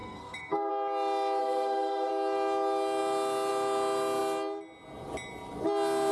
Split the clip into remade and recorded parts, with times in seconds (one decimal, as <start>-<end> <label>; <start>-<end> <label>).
0.0-0.7 remade; 0.7-1.4 recorded; 1.4-2.1 remade; 2.1-6.1 recorded